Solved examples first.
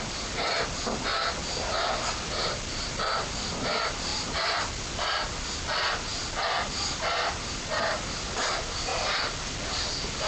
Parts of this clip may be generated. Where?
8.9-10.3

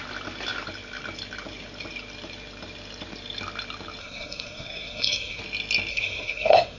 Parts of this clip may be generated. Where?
4.0-5.4; 5.9-6.8

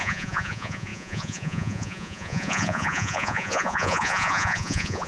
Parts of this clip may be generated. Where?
0.0-5.1